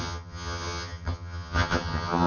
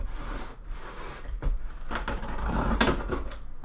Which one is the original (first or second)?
second